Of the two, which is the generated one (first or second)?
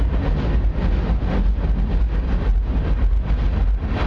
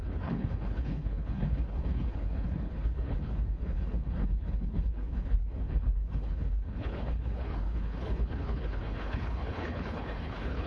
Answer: second